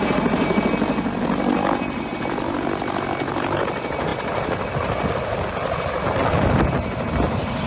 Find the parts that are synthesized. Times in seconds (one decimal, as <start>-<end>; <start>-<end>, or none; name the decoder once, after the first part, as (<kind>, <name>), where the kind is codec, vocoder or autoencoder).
none